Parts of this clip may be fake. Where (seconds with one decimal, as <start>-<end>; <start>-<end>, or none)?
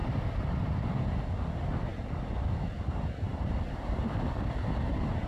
none